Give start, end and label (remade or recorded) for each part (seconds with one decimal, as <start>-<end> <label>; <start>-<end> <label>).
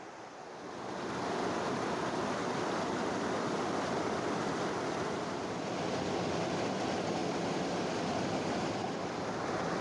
0.0-9.8 recorded